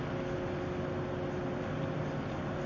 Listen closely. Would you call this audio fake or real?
real